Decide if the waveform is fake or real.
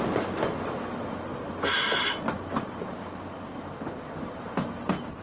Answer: real